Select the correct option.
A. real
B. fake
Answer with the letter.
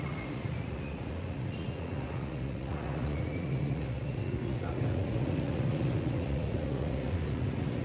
B